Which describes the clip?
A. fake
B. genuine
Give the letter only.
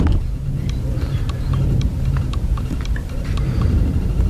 A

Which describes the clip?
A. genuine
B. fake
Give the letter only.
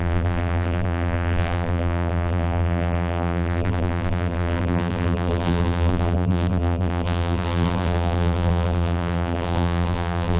B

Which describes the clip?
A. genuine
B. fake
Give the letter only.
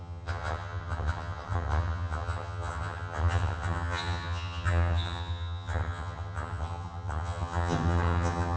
B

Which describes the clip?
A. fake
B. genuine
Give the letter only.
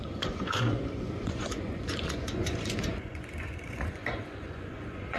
A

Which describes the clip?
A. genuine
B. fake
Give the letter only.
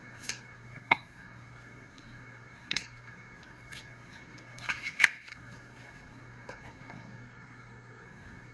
B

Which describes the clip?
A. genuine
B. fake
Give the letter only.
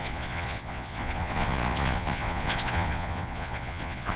B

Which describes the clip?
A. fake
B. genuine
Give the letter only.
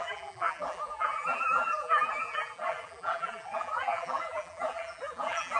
A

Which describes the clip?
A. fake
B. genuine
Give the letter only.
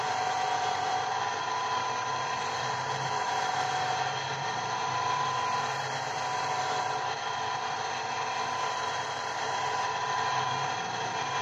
A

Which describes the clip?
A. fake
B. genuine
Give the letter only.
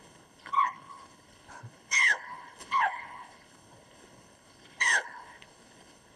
A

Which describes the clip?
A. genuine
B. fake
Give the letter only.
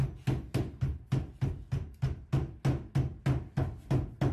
A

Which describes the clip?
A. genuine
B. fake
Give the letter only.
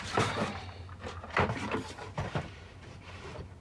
B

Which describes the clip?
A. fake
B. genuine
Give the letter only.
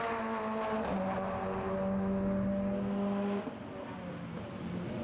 B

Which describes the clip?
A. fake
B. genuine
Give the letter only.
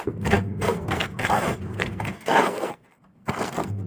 A